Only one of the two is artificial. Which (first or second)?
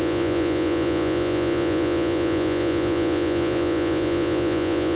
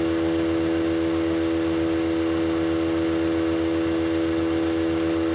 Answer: first